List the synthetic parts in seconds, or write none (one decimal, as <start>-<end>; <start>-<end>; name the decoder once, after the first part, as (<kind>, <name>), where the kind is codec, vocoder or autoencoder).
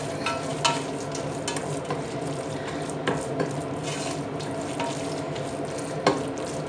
none